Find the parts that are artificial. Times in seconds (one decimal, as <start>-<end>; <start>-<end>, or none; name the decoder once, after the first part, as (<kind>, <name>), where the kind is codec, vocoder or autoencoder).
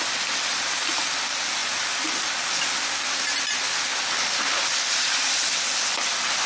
none